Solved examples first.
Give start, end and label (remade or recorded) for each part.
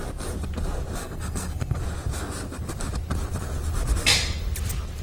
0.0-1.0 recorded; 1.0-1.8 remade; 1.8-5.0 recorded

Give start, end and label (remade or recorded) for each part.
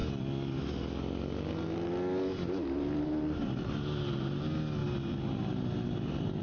0.0-2.3 recorded; 2.3-3.6 remade; 3.6-4.8 recorded; 4.8-6.4 remade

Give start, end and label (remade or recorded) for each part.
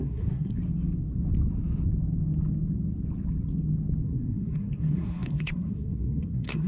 0.0-0.6 remade; 0.6-4.0 recorded; 4.0-6.7 remade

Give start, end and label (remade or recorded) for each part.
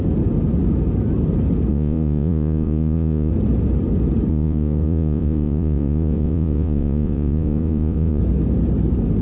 0.0-1.7 recorded; 1.7-3.3 remade; 3.3-4.3 recorded; 4.3-8.2 remade; 8.2-9.2 recorded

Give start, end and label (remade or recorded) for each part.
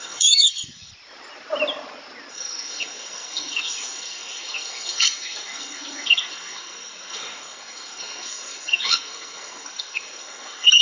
0.0-0.9 remade; 0.9-2.3 recorded; 2.3-10.8 remade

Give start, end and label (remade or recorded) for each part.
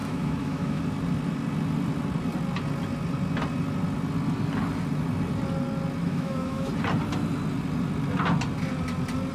0.0-0.8 remade; 0.8-6.0 recorded; 6.0-6.7 remade; 6.7-9.3 recorded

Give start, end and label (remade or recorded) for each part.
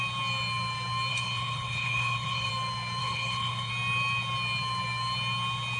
0.0-1.1 recorded; 1.1-2.5 remade; 2.5-3.0 recorded; 3.0-3.7 remade; 3.7-5.8 recorded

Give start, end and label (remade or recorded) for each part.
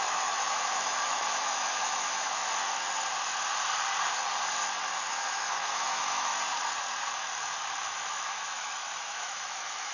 0.0-2.4 remade; 2.4-5.1 recorded; 5.1-6.3 remade; 6.3-7.8 recorded; 7.8-9.9 remade